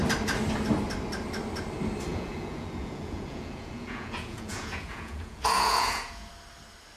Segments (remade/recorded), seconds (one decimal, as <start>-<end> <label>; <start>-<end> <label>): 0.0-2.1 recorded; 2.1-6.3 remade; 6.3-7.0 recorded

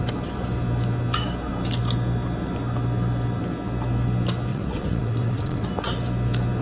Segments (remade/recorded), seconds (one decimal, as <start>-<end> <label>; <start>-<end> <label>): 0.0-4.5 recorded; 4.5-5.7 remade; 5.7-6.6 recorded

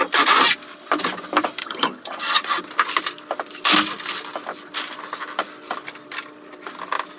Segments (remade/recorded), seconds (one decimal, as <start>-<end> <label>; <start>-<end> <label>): 0.0-1.6 recorded; 1.6-2.6 remade; 2.6-7.2 recorded